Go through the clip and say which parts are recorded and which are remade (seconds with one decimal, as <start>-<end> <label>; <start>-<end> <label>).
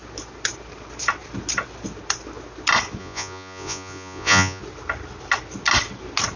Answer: 0.0-3.0 recorded; 3.0-4.6 remade; 4.6-6.4 recorded